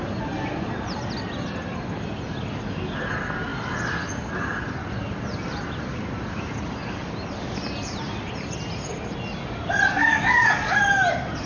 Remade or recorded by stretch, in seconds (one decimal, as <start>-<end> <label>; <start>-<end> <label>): 0.0-10.0 recorded; 10.0-10.8 remade; 10.8-11.5 recorded